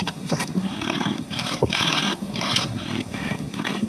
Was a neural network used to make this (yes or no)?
yes